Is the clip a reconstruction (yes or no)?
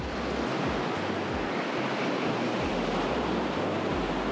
no